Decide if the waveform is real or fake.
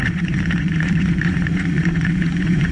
fake